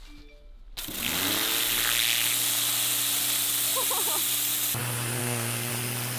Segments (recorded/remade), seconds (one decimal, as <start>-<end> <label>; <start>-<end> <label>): 0.0-5.2 recorded; 5.2-5.7 remade; 5.7-6.2 recorded